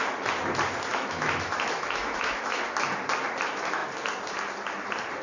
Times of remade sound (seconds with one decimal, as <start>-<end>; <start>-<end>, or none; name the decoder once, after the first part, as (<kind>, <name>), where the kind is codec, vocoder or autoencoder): 0.9-2.6 (autoencoder, DAC-VAE)